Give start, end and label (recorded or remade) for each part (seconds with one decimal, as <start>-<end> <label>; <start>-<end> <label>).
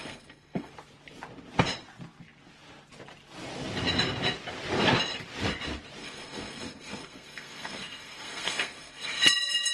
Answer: 0.0-0.7 remade; 0.7-6.0 recorded; 6.0-9.2 remade; 9.2-9.7 recorded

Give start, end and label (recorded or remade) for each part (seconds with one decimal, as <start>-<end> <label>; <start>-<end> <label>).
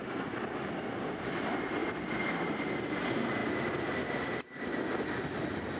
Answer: 0.0-1.8 recorded; 1.8-2.8 remade; 2.8-5.8 recorded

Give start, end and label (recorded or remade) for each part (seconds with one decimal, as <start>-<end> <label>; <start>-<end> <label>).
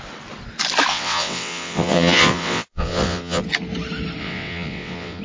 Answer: 0.0-0.9 recorded; 0.9-3.4 remade; 3.4-4.2 recorded; 4.2-5.2 remade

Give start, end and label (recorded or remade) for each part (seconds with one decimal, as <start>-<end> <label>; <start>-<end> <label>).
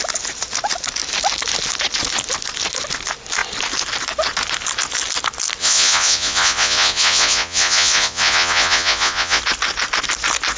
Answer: 0.0-5.6 recorded; 5.6-9.4 remade; 9.4-10.6 recorded